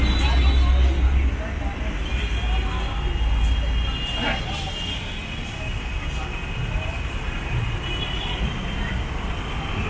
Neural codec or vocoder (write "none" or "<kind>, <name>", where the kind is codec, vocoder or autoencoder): none